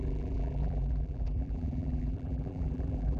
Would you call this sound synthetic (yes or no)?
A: yes